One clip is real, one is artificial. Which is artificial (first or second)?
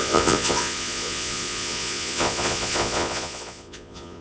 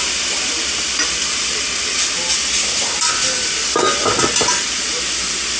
first